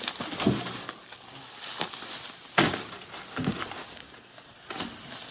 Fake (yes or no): no